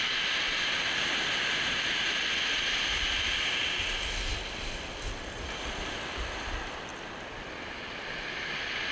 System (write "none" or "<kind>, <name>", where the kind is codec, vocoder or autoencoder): none